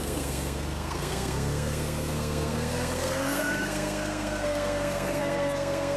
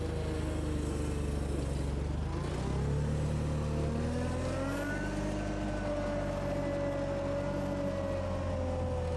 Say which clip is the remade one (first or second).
first